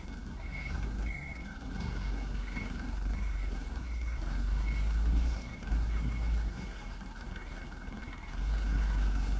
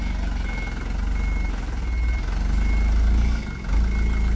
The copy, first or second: first